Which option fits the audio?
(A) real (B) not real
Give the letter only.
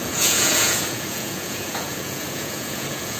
B